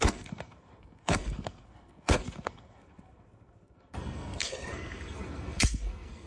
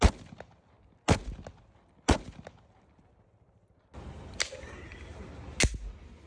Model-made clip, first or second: first